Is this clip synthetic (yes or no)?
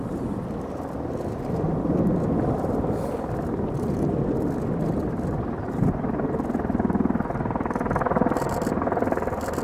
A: no